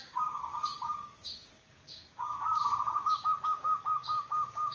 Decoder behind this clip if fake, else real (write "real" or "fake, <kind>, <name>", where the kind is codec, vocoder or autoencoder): fake, codec, DAC